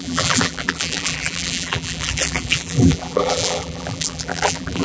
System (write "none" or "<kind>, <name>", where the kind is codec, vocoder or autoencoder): vocoder, BigVGAN v2